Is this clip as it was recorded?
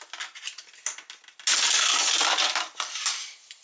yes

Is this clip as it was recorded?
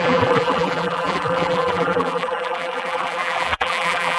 no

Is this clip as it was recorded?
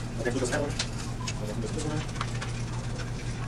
yes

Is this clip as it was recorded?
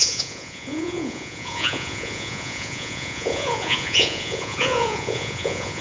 no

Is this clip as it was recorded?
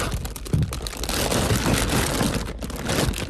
yes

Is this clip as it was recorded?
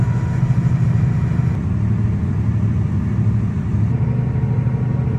yes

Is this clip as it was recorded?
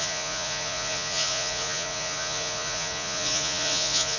no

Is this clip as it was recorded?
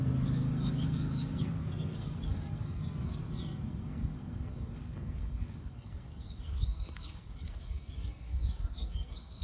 no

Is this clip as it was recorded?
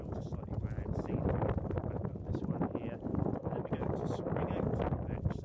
yes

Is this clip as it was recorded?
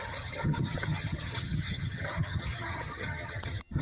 no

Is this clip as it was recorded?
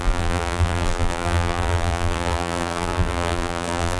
no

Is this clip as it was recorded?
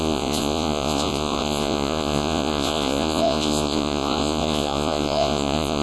no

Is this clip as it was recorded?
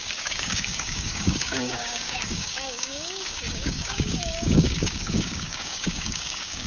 no